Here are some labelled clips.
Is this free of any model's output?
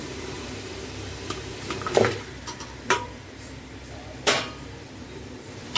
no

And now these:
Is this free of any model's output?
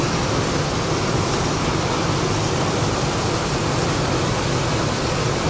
yes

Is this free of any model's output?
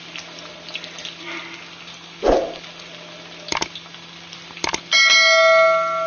yes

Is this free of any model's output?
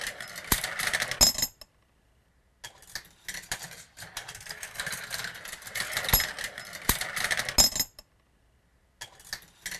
yes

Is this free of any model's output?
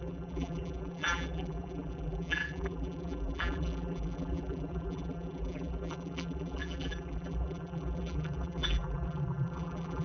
no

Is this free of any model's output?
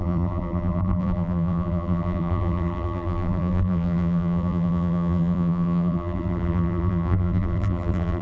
no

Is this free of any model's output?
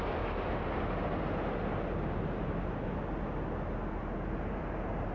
yes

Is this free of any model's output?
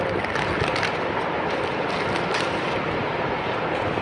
yes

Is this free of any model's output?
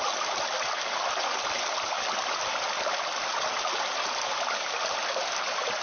yes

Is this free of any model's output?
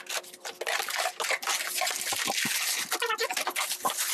yes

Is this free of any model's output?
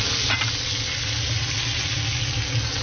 yes